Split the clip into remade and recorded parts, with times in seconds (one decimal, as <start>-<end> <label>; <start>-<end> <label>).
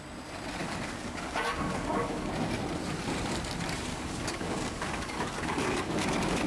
0.0-0.6 recorded; 0.6-2.3 remade; 2.3-3.9 recorded; 3.9-6.5 remade